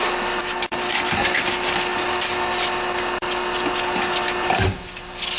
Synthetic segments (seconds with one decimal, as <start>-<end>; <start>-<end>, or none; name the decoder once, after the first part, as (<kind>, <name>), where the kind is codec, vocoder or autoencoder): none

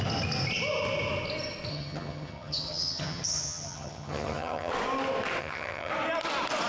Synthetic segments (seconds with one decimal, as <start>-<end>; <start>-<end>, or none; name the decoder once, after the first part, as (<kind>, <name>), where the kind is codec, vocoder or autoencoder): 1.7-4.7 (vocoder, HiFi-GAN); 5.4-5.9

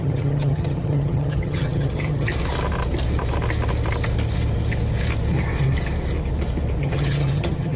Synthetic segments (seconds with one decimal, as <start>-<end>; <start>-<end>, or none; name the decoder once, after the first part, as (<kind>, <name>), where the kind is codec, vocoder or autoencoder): 0.0-2.3 (vocoder, HiFi-GAN); 6.8-7.8